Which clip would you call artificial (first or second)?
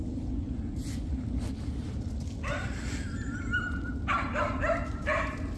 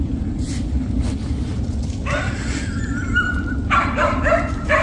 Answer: second